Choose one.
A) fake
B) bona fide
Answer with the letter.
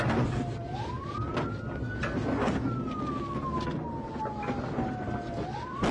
B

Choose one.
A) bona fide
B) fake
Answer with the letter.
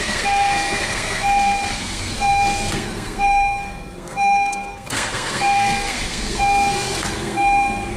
B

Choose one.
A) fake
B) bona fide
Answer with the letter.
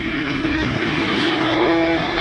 A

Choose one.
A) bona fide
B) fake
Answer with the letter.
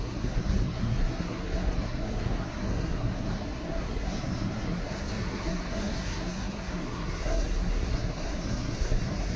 B